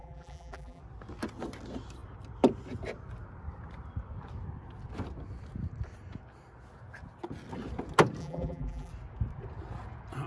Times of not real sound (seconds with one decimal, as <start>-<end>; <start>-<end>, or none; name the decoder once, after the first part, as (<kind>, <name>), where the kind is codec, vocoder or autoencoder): 0.0-0.8 (vocoder, BigVGAN v2); 8.2-8.9